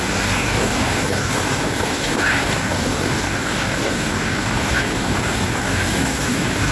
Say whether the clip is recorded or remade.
remade